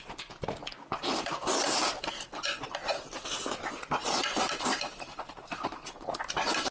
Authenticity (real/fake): real